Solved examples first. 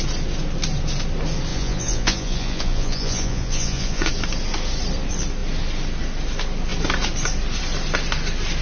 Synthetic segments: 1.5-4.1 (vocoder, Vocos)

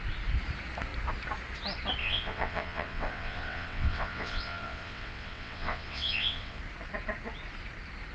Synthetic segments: 2.0-6.6 (vocoder, WaveNeXt)

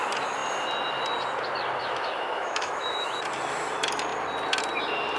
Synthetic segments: 1.8-3.1 (autoencoder, DAC-VAE)

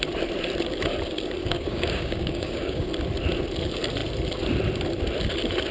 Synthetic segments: 1.4-2.9 (codec, DAC)

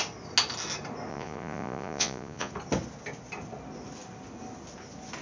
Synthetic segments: 1.1-2.5 (vocoder, Vocos)

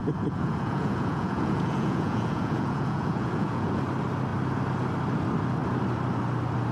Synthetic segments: 0.0-3.8 (vocoder, Vocos)